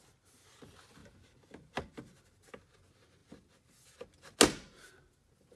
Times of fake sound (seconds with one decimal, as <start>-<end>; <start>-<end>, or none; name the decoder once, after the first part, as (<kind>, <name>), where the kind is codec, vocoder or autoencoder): none